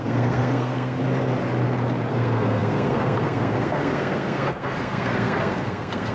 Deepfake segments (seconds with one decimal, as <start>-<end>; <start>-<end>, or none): 0.0-1.0; 2.1-6.1